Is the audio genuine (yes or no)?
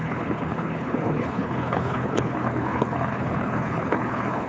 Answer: no